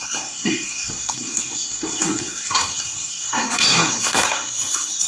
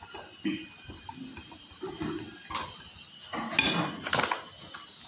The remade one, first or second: first